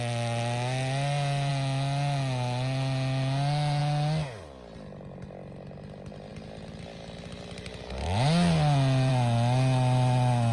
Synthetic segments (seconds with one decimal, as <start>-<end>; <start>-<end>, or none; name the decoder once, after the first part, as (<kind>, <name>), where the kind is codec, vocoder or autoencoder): none

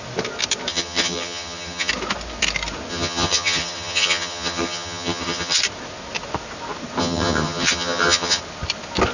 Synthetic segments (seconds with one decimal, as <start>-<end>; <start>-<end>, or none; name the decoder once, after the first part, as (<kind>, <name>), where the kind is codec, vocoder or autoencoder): 0.7-1.9 (vocoder, HiFi-GAN); 2.9-5.6; 7.0-8.4

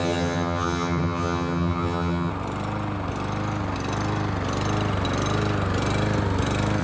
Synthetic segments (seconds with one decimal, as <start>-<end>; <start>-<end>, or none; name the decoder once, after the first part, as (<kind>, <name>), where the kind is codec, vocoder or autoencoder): 0.0-2.3 (vocoder, HiFi-GAN)